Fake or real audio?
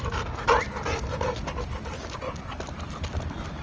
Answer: real